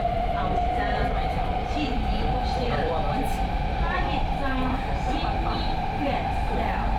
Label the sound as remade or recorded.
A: remade